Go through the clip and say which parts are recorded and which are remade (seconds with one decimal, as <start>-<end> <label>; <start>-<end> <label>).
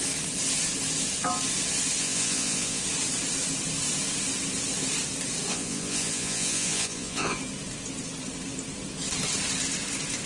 0.0-2.0 recorded; 2.0-2.8 remade; 2.8-5.5 recorded; 5.5-7.4 remade; 7.4-10.3 recorded